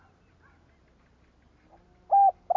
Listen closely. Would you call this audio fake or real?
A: real